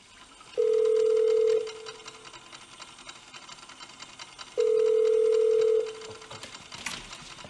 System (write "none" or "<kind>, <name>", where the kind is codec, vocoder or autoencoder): none